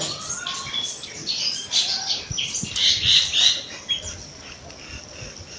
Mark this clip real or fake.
real